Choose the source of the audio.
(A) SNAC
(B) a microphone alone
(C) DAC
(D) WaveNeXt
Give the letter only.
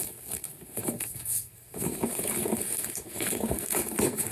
A